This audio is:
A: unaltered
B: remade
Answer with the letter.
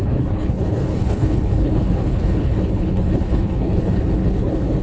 B